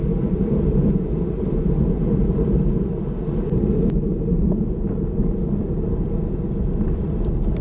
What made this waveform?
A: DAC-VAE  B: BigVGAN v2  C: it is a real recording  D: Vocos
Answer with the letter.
C